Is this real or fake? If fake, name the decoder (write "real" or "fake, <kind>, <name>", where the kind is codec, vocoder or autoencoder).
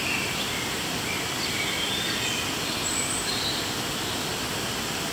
real